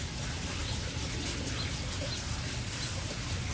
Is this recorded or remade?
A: recorded